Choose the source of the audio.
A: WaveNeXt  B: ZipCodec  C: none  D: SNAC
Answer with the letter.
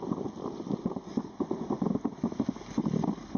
C